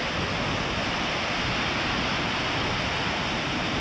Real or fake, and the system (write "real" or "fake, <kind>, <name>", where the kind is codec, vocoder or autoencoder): real